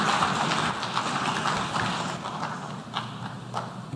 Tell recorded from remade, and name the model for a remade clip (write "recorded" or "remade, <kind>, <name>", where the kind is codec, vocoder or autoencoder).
recorded